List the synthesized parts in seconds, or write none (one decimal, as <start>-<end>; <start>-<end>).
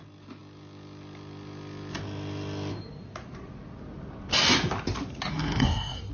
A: 5.3-6.1